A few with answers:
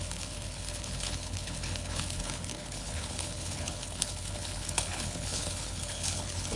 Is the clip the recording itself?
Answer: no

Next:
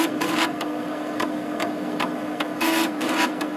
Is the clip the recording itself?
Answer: no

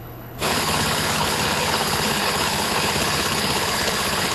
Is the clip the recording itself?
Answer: no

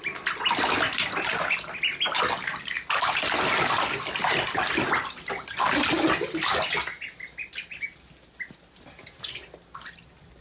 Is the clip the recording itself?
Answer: yes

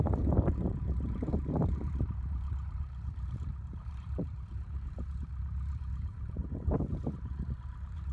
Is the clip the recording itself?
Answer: no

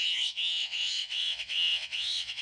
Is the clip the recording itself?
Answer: no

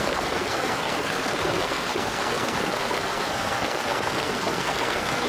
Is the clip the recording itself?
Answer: no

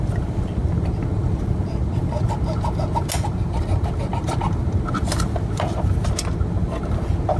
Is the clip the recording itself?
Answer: yes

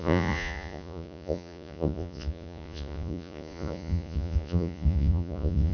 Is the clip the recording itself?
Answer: no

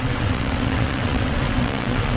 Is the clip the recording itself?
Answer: no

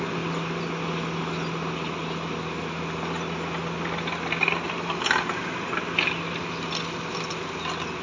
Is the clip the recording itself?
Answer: yes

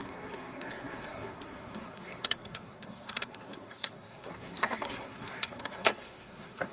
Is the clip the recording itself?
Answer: no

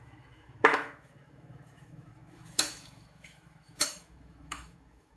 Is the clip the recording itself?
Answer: no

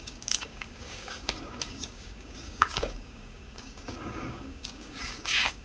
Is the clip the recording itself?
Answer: no